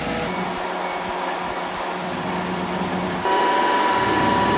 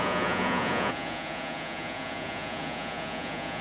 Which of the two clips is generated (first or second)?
second